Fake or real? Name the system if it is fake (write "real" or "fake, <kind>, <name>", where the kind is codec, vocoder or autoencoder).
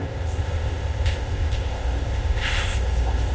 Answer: fake, codec, ZipCodec